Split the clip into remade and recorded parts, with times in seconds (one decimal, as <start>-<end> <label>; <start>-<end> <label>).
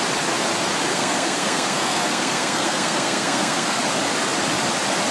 0.0-0.9 recorded; 0.9-3.8 remade; 3.8-5.1 recorded